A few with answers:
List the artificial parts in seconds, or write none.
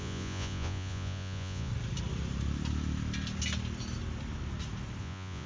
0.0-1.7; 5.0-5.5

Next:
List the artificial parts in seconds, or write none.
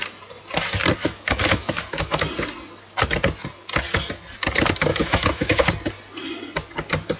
1.0-2.2; 4.9-5.6